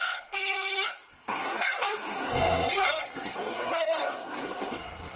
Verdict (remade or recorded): remade